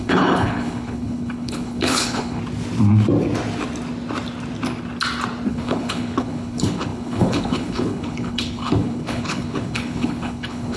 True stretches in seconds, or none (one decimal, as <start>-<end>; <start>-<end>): 2.4-5.5